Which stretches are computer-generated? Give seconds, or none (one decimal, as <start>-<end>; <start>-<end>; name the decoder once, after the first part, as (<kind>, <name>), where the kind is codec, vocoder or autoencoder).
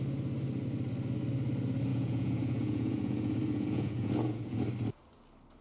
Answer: 1.9-4.6 (vocoder, Vocos)